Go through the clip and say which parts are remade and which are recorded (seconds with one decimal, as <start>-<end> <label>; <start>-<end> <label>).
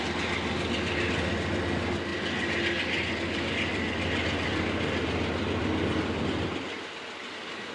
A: 0.0-7.7 recorded